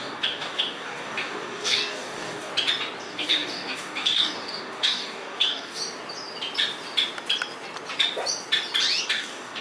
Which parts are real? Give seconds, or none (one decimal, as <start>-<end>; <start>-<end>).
2.5-3.0; 5.8-9.0